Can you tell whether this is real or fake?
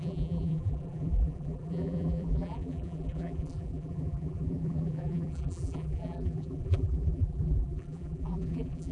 fake